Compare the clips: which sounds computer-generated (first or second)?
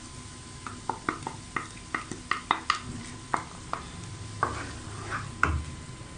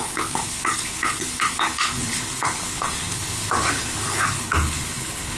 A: second